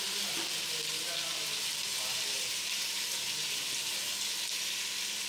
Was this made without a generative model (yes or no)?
yes